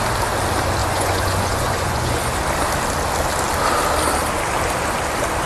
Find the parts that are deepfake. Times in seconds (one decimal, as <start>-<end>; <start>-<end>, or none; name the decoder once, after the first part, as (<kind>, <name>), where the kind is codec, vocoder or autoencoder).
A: 0.8-2.3 (vocoder, Vocos)